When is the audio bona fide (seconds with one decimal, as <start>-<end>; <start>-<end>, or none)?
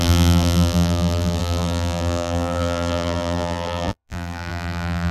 none